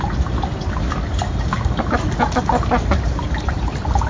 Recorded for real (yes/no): yes